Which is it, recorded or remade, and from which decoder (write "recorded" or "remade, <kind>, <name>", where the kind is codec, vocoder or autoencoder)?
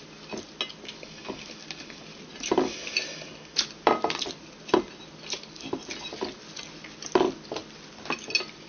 recorded